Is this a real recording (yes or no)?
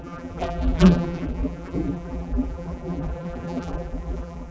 no